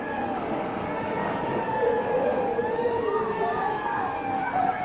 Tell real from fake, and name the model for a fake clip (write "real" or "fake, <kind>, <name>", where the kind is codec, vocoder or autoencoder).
fake, codec, DAC